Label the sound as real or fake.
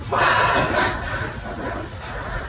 real